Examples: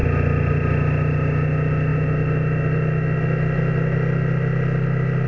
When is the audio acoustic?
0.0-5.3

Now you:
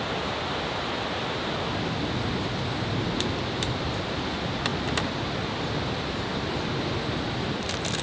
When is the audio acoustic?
0.0-6.3; 6.9-8.0